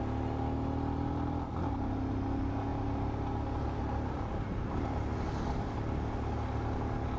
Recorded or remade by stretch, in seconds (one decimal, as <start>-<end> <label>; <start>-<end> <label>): 0.0-7.2 recorded